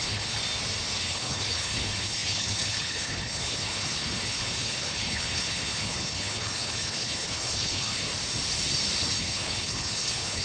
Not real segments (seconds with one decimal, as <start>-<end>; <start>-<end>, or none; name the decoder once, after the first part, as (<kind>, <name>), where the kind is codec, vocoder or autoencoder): 0.0-0.4 (codec, HILCodec); 1.0-8.1; 9.2-10.4